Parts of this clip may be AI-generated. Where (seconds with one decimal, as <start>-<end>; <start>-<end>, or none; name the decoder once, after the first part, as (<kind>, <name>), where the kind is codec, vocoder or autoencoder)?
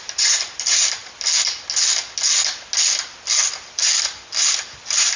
0.0-1.0 (vocoder, BigVGAN v2); 3.5-5.2